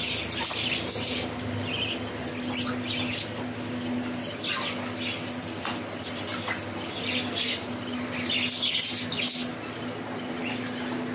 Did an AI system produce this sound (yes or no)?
no